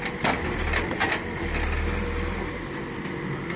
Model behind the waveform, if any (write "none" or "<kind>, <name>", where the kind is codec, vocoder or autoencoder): none